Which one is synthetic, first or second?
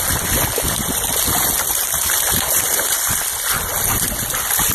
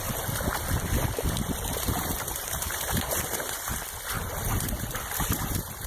second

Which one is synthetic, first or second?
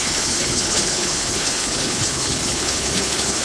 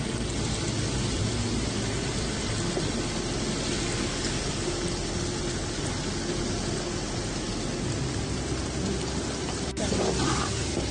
first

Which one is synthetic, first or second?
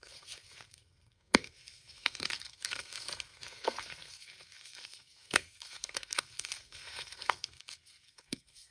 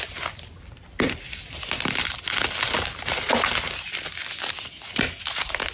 first